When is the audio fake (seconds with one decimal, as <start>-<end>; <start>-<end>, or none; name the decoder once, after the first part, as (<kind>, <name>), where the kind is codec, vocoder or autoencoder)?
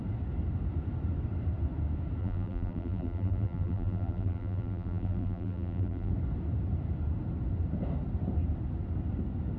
2.2-6.1 (vocoder, BigVGAN v2)